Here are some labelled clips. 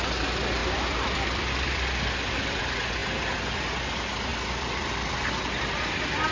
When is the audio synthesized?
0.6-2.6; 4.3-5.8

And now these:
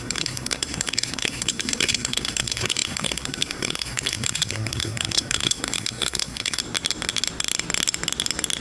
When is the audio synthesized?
0.0-6.6